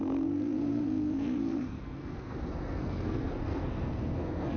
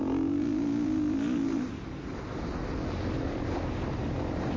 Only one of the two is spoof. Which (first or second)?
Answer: first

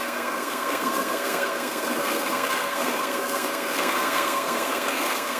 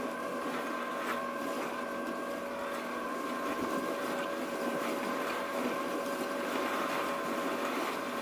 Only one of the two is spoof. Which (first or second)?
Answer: first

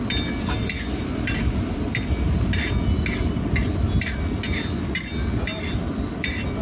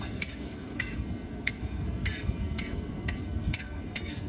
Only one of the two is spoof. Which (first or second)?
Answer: second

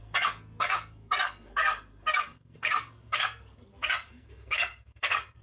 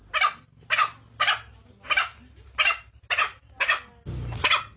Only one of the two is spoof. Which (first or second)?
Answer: first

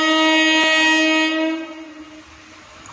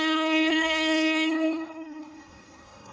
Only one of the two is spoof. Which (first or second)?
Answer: second